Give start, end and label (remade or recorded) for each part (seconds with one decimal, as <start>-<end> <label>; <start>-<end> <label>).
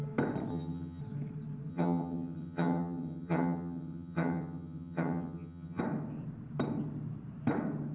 0.0-0.5 recorded; 0.5-1.0 remade; 1.0-1.7 recorded; 1.7-5.8 remade; 5.8-7.9 recorded